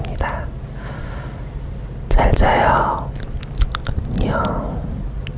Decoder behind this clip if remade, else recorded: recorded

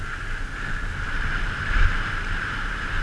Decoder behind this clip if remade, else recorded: recorded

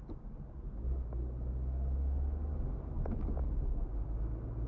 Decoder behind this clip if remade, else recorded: recorded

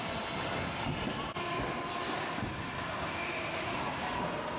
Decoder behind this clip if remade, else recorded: recorded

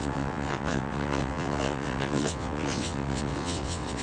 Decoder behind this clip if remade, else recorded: remade, vocoder, WaveNeXt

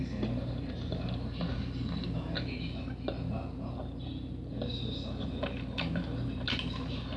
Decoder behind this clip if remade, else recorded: recorded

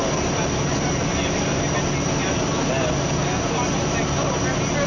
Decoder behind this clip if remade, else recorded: recorded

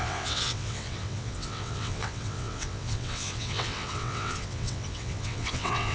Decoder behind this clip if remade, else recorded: remade, vocoder, WaveNeXt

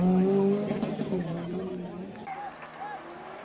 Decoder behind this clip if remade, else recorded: recorded